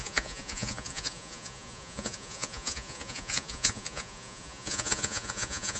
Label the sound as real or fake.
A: fake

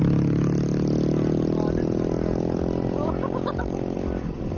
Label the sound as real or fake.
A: real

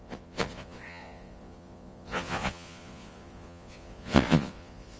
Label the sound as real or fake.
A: fake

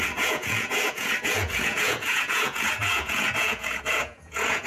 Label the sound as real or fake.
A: fake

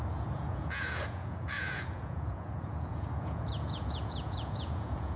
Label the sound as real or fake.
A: fake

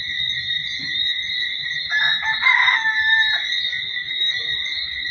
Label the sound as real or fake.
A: real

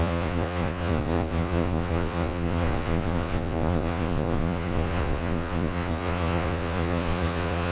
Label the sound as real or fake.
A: fake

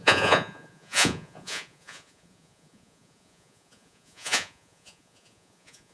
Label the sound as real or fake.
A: fake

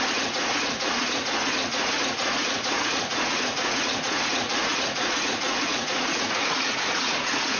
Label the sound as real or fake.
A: fake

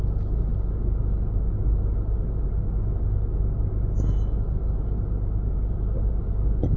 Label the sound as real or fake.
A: real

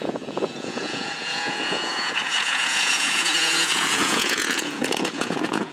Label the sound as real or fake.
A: fake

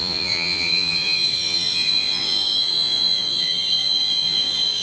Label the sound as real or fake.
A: fake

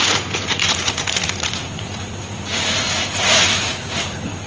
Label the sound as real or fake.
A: fake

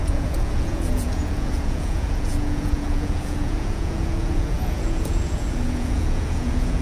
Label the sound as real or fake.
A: fake